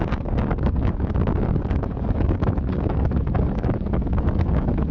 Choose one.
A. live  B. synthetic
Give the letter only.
B